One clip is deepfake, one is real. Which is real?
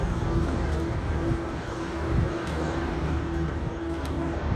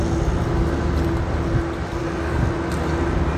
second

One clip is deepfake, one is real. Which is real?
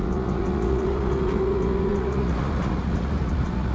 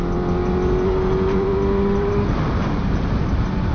second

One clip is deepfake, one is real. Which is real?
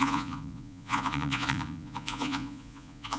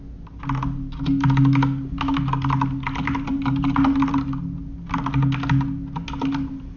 second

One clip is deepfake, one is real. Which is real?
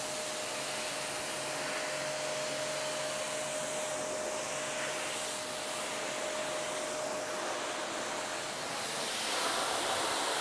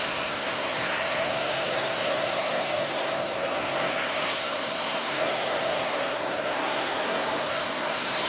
first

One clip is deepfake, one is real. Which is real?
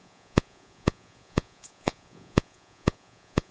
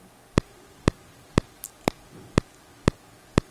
second